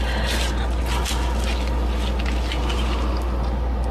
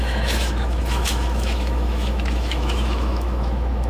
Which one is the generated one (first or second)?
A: second